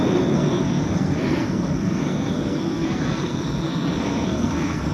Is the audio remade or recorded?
remade